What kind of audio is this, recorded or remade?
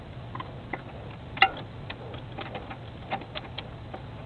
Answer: recorded